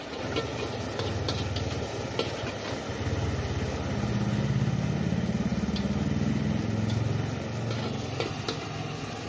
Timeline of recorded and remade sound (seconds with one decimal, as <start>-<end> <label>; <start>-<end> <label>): 0.0-9.3 recorded